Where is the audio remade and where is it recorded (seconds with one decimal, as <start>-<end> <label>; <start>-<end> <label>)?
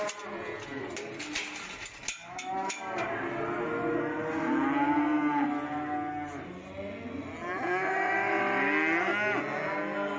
0.0-2.2 recorded; 2.2-2.8 remade; 2.8-10.2 recorded